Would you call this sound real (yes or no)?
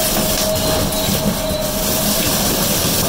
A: yes